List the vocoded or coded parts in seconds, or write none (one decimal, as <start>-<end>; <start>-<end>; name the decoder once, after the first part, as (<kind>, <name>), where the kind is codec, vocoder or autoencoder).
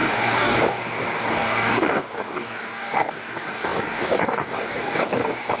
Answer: 0.0-5.6 (codec, DAC)